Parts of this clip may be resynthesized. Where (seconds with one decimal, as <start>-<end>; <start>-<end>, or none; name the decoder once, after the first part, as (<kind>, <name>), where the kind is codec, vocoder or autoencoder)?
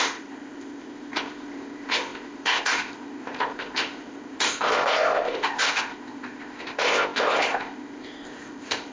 0.0-8.9 (codec, ZipCodec)